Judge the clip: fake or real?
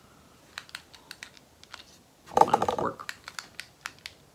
real